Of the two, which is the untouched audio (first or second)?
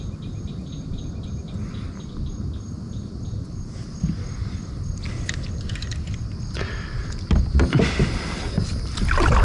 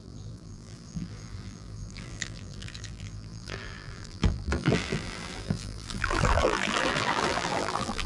first